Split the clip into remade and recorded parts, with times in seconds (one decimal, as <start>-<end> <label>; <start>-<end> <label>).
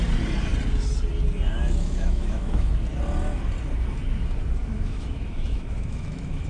0.0-1.6 recorded; 1.6-2.7 remade; 2.7-4.6 recorded; 4.6-6.5 remade